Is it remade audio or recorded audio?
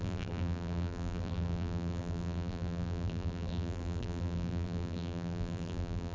remade